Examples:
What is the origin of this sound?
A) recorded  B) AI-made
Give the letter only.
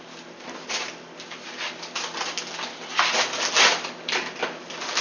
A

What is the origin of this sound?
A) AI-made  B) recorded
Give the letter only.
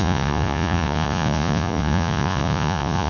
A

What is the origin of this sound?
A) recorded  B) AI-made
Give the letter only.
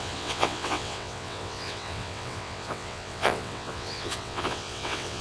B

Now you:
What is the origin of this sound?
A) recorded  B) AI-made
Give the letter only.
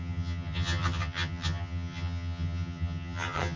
B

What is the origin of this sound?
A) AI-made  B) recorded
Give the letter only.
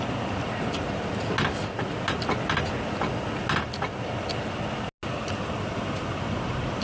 B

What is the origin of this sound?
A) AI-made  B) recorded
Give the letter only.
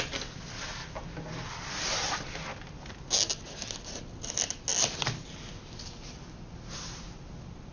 B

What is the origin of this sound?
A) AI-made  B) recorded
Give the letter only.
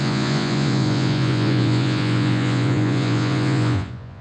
A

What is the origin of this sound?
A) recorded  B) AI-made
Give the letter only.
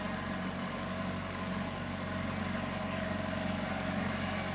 B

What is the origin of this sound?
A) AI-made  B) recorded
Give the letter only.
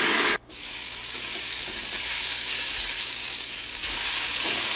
A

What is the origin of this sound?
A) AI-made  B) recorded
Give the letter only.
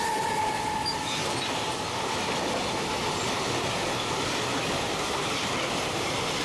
B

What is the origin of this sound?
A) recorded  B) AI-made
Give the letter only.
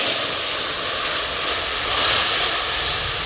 A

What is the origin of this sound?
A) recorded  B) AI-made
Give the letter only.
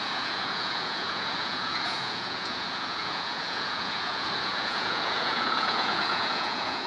B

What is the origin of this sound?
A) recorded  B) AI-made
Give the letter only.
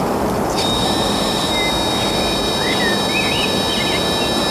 A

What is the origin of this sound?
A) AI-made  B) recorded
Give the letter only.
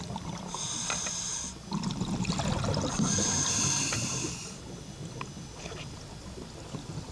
B